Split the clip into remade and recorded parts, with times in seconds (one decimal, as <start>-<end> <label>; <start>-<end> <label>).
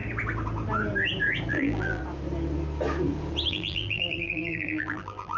0.0-1.5 recorded; 1.5-2.0 remade; 2.0-3.5 recorded; 3.5-5.4 remade